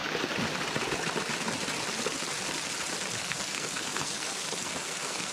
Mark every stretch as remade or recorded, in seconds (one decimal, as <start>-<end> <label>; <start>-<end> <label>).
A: 0.0-3.2 recorded; 3.2-5.3 remade